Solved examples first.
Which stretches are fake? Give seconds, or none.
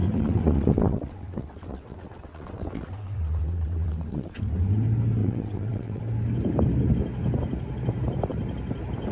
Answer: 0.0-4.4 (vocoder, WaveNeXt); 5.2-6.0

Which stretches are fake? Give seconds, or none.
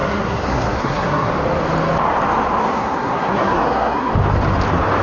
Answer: 0.0-1.3 (codec, SNAC); 2.6-4.1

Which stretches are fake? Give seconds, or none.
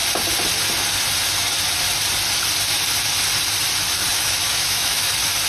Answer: 4.1-5.1 (autoencoder, DAC-VAE)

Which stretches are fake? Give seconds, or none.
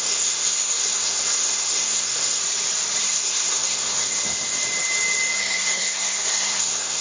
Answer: 0.0-2.4 (codec, SNAC); 3.0-4.2; 5.4-7.0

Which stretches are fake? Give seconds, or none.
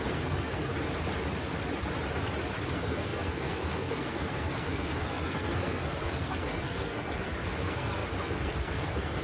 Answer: 0.0-0.7 (codec, SNAC); 2.7-9.2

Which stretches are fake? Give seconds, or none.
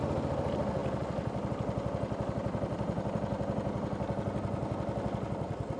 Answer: none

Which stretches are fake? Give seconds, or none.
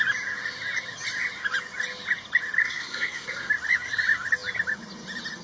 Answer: 2.6-3.5 (codec, SNAC)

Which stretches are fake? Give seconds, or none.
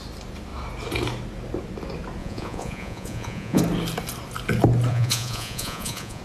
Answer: 2.2-3.6 (vocoder, Vocos); 4.9-6.2